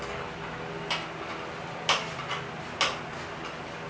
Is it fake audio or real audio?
real